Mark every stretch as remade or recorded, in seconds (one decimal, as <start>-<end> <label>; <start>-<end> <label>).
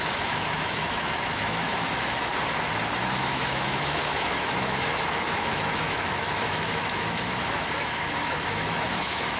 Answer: 0.0-2.3 remade; 2.3-3.0 recorded; 3.0-9.4 remade